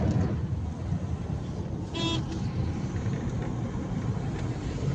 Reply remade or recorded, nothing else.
recorded